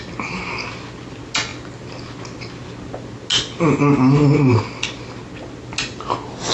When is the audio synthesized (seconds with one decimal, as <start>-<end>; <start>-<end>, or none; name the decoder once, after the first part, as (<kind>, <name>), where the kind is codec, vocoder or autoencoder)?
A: none